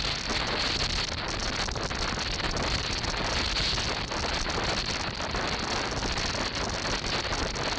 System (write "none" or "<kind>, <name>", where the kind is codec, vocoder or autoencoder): none